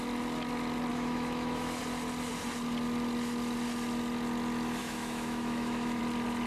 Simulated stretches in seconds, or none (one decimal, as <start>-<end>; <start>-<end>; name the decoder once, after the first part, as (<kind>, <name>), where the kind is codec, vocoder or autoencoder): 0.9-1.8 (autoencoder, DAC-VAE); 4.8-6.0